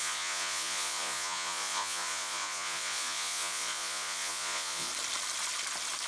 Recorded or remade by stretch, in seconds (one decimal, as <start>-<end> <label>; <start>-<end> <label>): 0.0-4.9 remade; 4.9-6.1 recorded